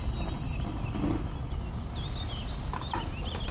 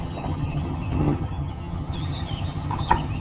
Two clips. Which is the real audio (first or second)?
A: first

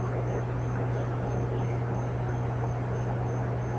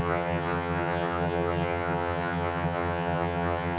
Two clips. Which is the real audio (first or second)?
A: first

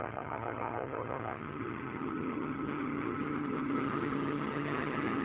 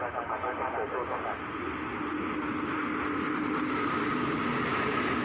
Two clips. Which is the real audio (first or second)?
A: second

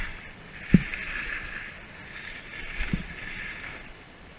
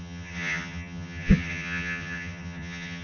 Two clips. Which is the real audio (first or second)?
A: first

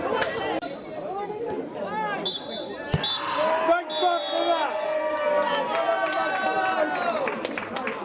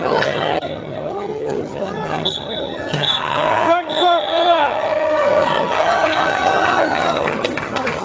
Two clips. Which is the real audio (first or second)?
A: first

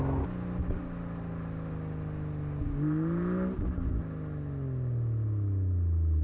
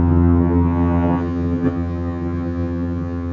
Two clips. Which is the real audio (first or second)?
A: first